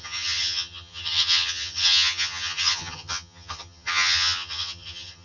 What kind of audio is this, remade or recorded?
remade